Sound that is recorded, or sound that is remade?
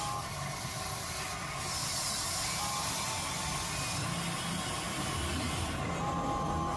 recorded